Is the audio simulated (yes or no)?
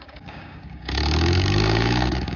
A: yes